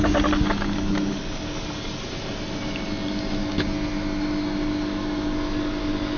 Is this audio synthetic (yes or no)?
no